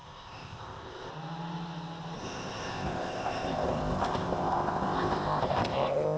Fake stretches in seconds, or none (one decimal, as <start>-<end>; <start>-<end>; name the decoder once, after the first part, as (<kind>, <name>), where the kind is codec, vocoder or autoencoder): 0.0-1.1 (codec, ZipCodec); 2.2-6.2